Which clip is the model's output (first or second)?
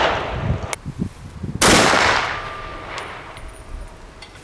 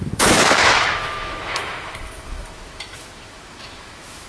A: second